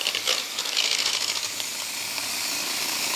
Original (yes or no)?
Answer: no